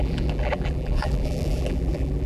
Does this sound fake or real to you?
fake